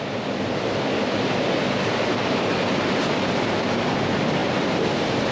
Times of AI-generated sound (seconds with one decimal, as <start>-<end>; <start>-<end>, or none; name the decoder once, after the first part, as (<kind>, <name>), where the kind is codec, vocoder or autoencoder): 4.4-5.3 (vocoder, BigVGAN v2)